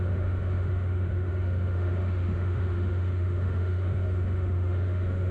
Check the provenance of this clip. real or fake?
fake